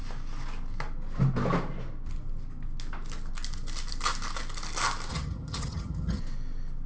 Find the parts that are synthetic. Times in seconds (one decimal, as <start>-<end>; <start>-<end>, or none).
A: 5.1-6.2